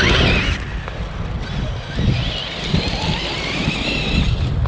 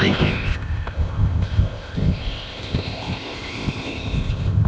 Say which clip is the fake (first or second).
second